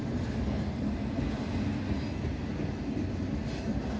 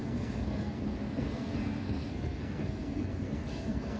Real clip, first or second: first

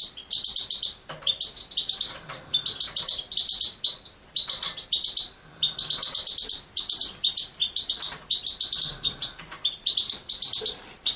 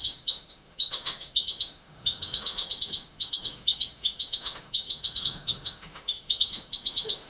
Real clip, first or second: first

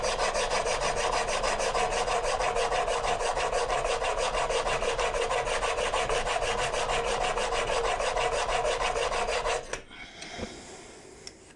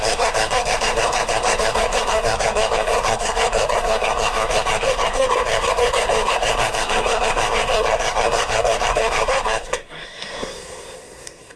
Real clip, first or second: first